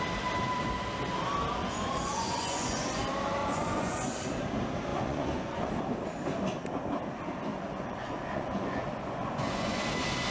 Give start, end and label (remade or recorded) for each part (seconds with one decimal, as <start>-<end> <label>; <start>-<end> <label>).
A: 0.0-1.6 recorded; 1.6-3.0 remade; 3.0-3.4 recorded; 3.4-4.1 remade; 4.1-4.9 recorded; 4.9-5.7 remade; 5.7-7.5 recorded; 7.5-9.8 remade; 9.8-10.3 recorded